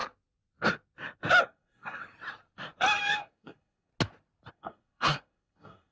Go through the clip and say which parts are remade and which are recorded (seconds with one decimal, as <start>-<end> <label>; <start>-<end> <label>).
0.0-1.4 recorded; 1.4-2.0 remade; 2.0-3.2 recorded; 3.2-3.9 remade; 3.9-4.5 recorded; 4.5-5.9 remade